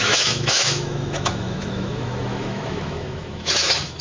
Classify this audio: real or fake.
fake